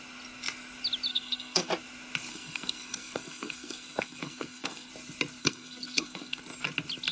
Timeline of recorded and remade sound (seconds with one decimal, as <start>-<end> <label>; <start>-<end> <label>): 0.0-1.1 recorded; 1.1-1.7 remade; 1.7-2.3 recorded; 2.3-4.9 remade; 4.9-5.4 recorded; 5.4-6.4 remade; 6.4-7.1 recorded